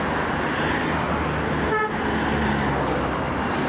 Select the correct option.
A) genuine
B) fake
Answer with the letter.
A